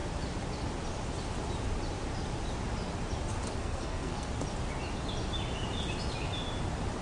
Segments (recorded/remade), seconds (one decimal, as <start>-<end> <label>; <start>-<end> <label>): 0.0-3.6 recorded; 3.6-4.3 remade; 4.3-7.0 recorded